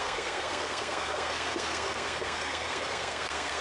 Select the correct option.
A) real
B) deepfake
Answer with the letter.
B